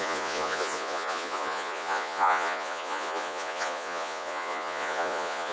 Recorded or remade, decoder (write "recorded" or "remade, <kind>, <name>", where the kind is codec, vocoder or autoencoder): remade, vocoder, Vocos